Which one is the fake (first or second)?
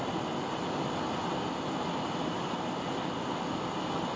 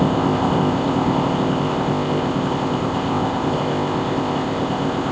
second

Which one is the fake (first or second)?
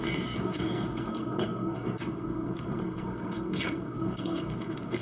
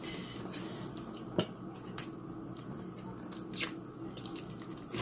first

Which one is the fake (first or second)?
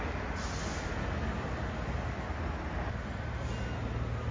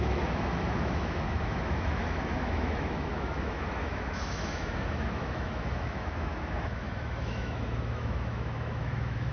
second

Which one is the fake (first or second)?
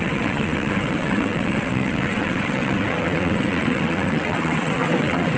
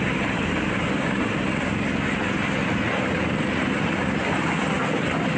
first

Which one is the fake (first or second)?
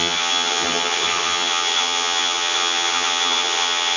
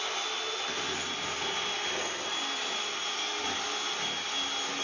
first